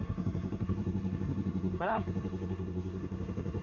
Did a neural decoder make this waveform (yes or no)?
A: yes